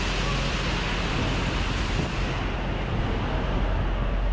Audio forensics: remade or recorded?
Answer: recorded